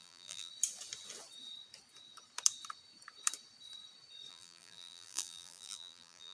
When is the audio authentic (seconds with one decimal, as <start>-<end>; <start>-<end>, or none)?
0.5-4.3